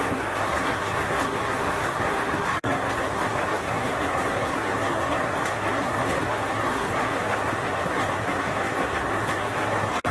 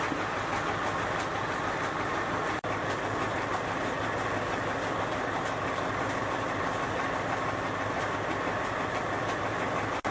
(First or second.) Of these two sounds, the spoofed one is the first